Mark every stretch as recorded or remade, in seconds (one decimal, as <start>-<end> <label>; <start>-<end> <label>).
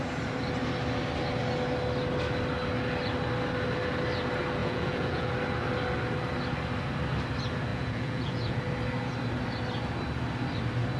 0.0-4.6 recorded; 4.6-5.3 remade; 5.3-7.7 recorded; 7.7-8.6 remade; 8.6-11.0 recorded